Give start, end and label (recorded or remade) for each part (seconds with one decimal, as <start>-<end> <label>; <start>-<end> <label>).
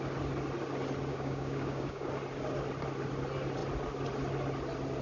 0.0-1.1 recorded; 1.1-2.1 remade; 2.1-5.0 recorded